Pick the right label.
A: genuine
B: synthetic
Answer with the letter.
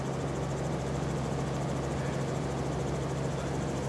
A